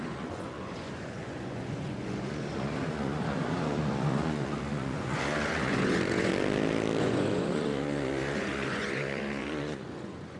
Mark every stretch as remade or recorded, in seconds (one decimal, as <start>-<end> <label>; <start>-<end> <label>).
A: 0.0-6.3 remade; 6.3-7.0 recorded; 7.0-10.4 remade